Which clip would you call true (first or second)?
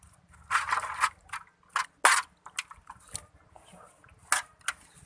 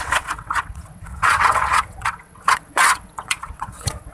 first